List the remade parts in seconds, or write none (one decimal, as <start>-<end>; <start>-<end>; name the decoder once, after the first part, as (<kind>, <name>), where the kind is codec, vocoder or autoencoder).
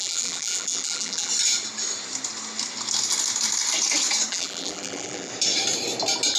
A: 0.0-1.3 (vocoder, BigVGAN v2); 4.3-5.3